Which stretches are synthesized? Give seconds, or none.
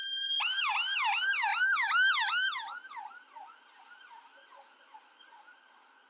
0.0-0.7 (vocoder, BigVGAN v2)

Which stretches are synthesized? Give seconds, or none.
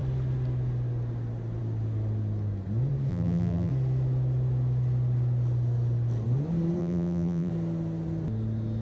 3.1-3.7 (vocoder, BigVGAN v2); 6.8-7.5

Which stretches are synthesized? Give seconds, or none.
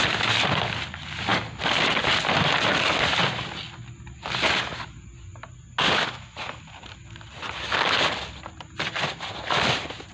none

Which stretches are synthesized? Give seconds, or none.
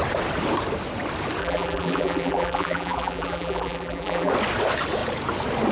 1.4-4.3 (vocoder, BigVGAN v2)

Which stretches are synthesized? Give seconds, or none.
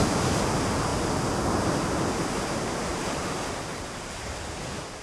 2.9-4.3 (vocoder, BigVGAN v2)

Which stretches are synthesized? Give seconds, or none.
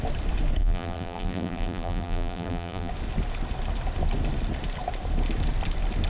0.6-2.9 (vocoder, BigVGAN v2)